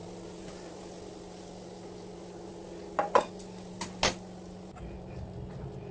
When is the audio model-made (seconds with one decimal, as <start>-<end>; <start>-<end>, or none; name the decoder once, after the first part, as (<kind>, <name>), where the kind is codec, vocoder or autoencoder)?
none